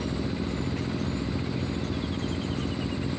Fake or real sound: real